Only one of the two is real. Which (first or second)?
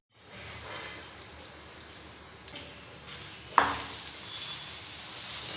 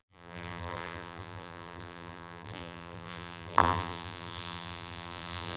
first